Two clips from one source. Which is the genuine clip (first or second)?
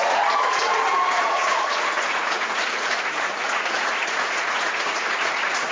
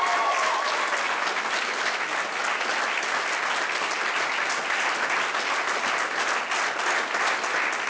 second